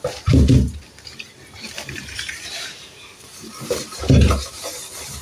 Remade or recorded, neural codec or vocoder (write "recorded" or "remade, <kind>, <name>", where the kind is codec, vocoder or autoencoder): remade, vocoder, BigVGAN v2